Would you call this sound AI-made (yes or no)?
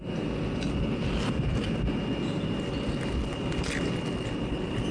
no